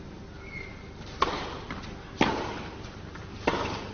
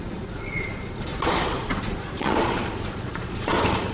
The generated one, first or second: second